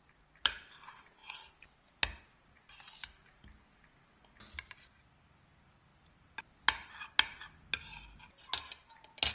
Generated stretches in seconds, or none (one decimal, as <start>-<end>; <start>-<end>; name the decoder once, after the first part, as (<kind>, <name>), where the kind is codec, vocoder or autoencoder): none